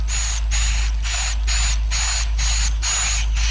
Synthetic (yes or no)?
no